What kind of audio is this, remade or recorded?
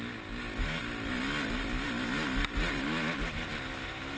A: recorded